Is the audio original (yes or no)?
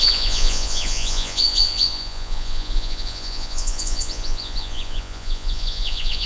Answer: no